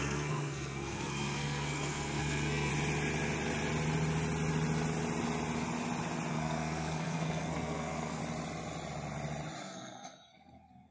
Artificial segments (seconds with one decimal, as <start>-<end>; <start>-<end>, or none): 0.0-2.7; 6.3-8.2; 9.6-10.9